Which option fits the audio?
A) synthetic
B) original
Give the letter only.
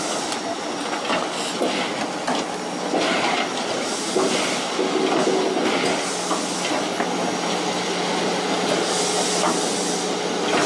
B